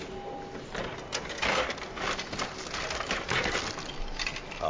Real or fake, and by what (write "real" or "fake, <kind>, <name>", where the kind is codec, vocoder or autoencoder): real